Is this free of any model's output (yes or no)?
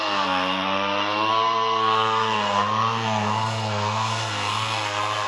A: no